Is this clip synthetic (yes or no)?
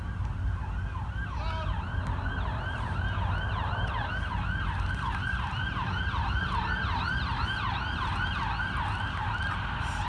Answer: no